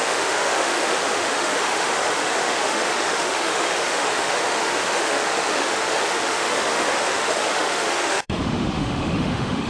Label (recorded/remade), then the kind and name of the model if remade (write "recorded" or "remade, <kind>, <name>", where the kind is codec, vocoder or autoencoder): remade, autoencoder, DAC-VAE